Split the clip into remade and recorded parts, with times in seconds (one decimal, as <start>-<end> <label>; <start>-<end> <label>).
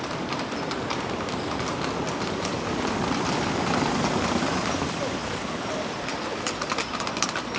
0.0-7.6 recorded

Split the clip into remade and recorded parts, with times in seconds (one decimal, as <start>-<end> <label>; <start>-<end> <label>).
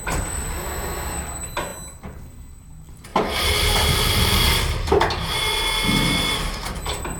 0.0-7.2 recorded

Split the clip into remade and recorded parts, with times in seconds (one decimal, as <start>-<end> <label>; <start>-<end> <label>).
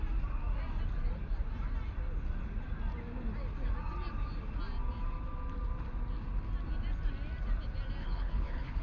0.0-8.0 recorded; 8.0-8.8 remade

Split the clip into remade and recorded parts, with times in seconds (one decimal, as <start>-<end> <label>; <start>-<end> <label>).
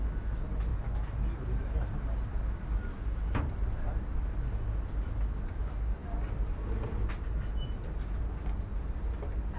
0.0-9.6 recorded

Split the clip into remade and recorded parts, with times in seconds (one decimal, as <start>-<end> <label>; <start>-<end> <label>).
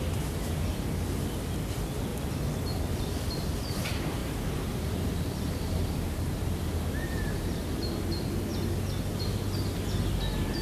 0.0-2.1 recorded; 2.1-2.8 remade; 2.8-4.2 recorded; 4.2-8.1 remade; 8.1-10.6 recorded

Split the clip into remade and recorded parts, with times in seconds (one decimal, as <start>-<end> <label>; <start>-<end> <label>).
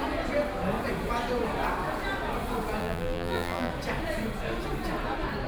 0.0-2.8 recorded; 2.8-3.7 remade; 3.7-5.5 recorded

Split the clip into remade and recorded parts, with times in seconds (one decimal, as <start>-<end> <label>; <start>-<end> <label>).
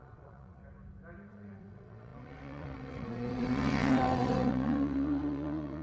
0.0-0.6 remade; 0.6-1.3 recorded; 1.3-5.8 remade